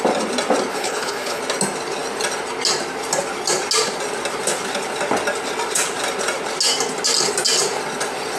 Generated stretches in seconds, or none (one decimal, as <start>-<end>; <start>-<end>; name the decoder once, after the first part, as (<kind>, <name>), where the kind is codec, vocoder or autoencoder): 0.7-1.4 (codec, HILCodec)